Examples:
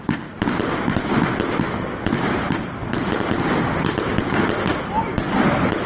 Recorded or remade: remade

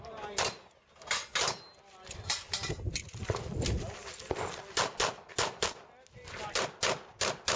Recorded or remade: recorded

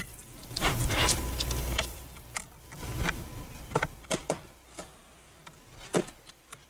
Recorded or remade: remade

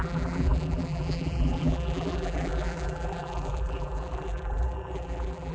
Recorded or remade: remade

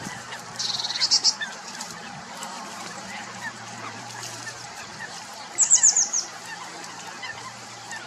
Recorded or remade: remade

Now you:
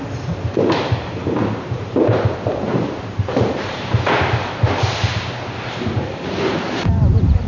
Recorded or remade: remade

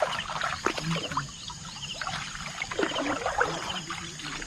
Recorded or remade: recorded